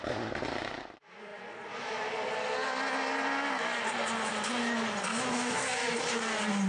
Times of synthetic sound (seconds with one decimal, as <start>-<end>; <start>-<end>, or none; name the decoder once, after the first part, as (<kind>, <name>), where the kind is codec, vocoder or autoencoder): 5.1-6.0 (autoencoder, DAC-VAE)